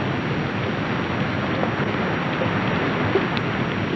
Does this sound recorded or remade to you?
recorded